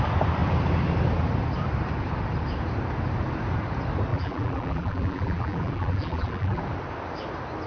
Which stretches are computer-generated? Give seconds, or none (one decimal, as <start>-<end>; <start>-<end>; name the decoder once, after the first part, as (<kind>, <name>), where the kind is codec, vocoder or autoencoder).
4.1-6.6 (vocoder, BigVGAN v2)